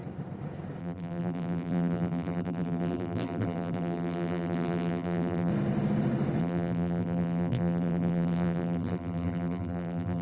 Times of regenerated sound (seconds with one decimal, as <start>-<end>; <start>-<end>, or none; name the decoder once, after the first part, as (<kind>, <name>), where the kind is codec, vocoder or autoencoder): 0.8-5.5 (vocoder, BigVGAN v2); 6.4-10.2